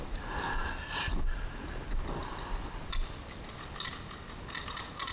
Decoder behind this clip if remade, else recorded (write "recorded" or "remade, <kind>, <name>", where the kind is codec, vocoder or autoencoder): recorded